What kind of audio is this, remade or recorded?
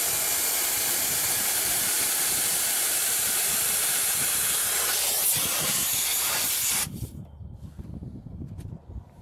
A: remade